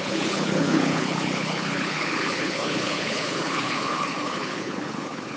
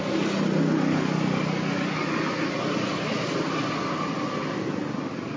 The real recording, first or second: second